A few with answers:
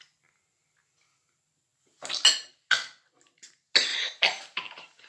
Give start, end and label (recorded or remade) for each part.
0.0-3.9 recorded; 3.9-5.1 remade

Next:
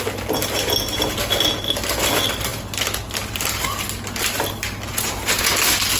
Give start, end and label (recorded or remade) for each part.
0.0-4.9 recorded; 4.9-5.5 remade; 5.5-6.0 recorded

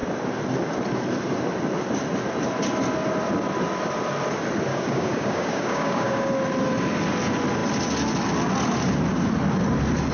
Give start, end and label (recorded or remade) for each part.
0.0-4.7 recorded; 4.7-6.3 remade; 6.3-10.1 recorded